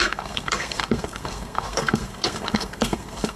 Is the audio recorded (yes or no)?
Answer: no